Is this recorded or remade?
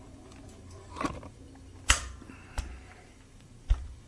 remade